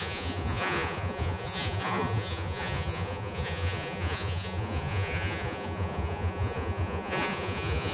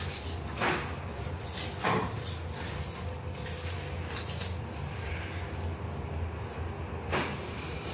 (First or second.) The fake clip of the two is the first